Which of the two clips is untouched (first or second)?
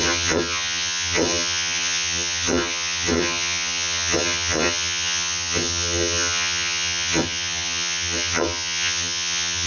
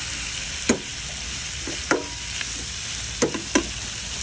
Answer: second